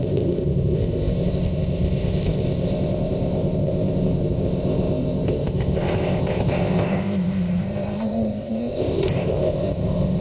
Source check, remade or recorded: remade